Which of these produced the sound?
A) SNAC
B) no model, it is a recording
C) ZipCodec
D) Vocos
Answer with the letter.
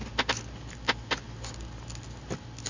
B